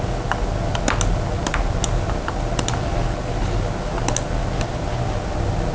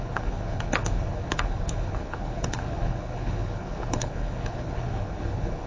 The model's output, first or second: second